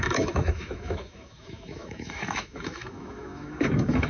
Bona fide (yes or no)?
no